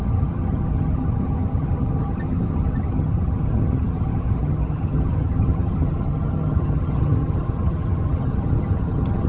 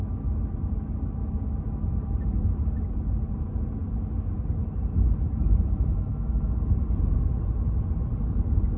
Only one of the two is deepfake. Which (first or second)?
first